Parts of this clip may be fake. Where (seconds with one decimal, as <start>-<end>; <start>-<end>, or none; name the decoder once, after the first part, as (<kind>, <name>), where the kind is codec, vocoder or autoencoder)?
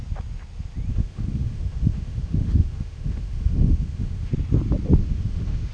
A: 0.9-4.3 (autoencoder, DAC-VAE); 5.0-5.7